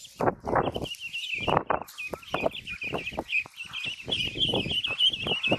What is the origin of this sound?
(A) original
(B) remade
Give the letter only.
A